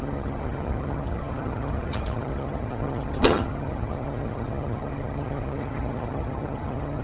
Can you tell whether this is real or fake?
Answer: fake